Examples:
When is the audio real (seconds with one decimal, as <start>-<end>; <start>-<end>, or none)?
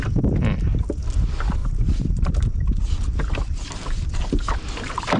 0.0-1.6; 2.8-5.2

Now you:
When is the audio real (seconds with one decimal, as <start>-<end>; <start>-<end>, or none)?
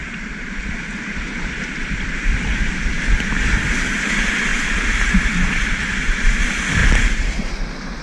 3.7-4.5; 6.3-6.8; 7.5-8.0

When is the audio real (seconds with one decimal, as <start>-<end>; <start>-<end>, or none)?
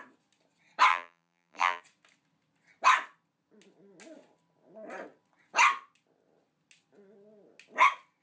0.0-0.9; 1.8-8.2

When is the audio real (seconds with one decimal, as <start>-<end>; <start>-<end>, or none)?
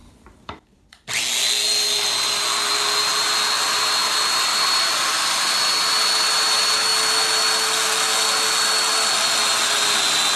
1.2-4.5; 5.5-10.4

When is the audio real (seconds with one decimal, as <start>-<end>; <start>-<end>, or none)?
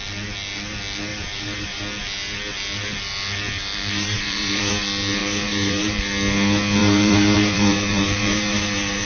0.0-1.1; 1.8-3.7; 4.7-5.2; 6.1-6.8